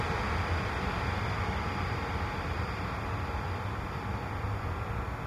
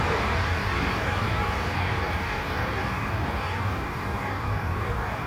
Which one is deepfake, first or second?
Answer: second